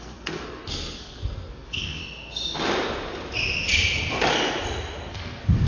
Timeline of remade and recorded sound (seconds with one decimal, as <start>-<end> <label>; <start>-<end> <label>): 0.0-2.0 remade; 2.0-5.1 recorded; 5.1-5.7 remade

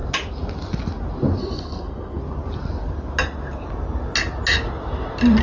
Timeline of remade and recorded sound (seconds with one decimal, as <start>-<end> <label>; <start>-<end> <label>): 0.0-1.4 recorded; 1.4-2.2 remade; 2.2-5.4 recorded

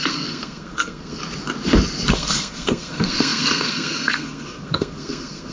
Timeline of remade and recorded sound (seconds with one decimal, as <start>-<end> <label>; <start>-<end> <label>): 0.0-1.2 remade; 1.2-2.1 recorded; 2.1-5.5 remade

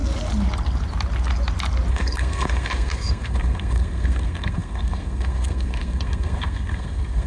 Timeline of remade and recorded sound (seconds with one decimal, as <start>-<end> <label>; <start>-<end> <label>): 0.0-1.9 recorded; 1.9-7.3 remade